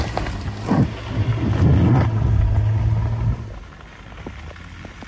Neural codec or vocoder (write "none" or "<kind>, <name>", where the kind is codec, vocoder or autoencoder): none